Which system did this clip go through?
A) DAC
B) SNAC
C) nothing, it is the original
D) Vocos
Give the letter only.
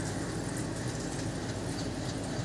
C